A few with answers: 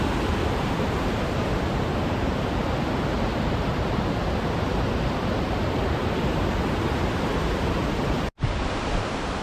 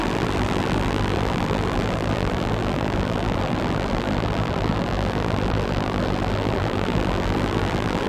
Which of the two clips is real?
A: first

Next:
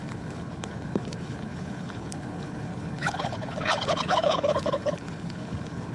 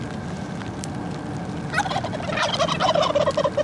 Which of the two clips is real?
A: second